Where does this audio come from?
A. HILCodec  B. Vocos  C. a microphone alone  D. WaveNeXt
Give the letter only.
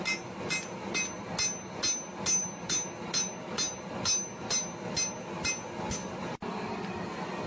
C